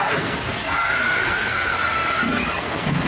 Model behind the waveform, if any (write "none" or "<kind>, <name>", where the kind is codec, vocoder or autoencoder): codec, SNAC